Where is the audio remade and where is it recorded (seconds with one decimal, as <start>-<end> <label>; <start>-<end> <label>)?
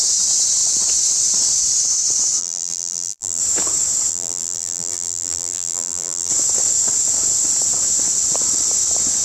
0.0-2.4 recorded; 2.4-3.4 remade; 3.4-4.1 recorded; 4.1-6.3 remade; 6.3-9.2 recorded